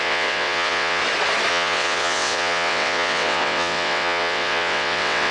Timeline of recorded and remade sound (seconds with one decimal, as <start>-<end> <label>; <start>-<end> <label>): 0.0-1.0 remade; 1.0-1.5 recorded; 1.5-5.3 remade